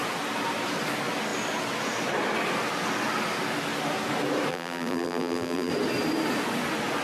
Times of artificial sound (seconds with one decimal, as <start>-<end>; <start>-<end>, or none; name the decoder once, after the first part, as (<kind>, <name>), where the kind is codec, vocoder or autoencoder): 4.5-5.7 (vocoder, BigVGAN v2)